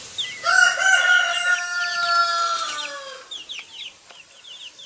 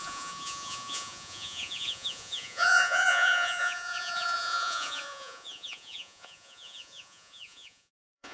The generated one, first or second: second